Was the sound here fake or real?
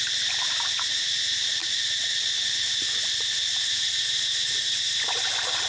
real